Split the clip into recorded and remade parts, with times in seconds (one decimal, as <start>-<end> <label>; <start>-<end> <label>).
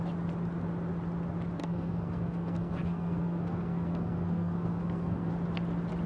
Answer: 0.0-1.6 recorded; 1.6-5.3 remade; 5.3-6.1 recorded